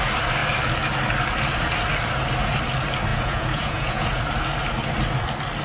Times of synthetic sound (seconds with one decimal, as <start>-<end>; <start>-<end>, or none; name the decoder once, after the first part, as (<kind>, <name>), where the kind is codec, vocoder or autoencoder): 3.1-4.2 (vocoder, Vocos)